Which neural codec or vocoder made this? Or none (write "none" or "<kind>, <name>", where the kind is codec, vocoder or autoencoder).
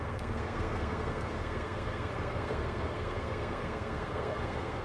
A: codec, SNAC